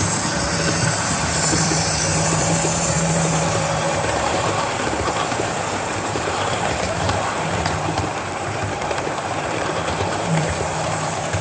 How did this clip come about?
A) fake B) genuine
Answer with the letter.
A